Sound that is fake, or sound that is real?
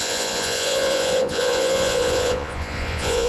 fake